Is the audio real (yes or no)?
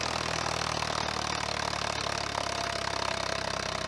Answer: yes